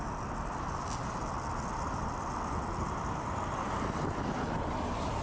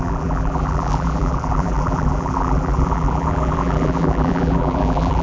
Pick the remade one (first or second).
second